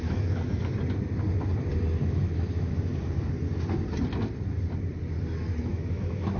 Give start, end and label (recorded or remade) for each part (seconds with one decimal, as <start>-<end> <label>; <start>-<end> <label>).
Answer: 0.0-0.6 remade; 0.6-2.0 recorded; 2.0-2.9 remade; 2.9-5.6 recorded; 5.6-6.4 remade